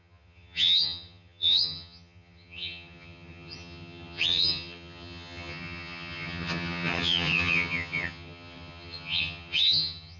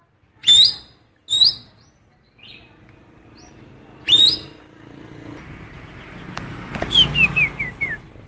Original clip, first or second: second